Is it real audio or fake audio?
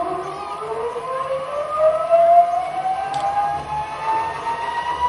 real